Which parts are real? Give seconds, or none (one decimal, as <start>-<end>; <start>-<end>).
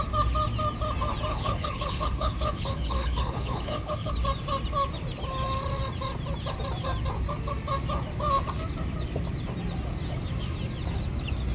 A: 0.0-1.3; 4.1-11.5